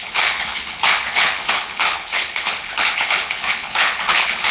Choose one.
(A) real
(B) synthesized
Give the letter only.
B